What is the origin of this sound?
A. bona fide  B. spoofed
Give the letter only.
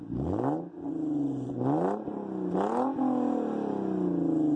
A